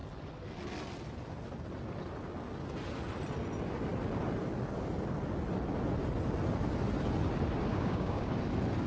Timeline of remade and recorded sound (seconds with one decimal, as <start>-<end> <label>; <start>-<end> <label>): 0.0-7.7 recorded; 7.7-8.3 remade; 8.3-8.9 recorded